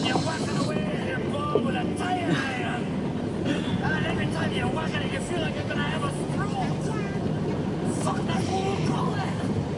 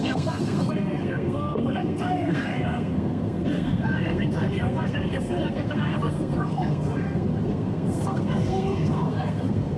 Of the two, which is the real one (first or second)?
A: first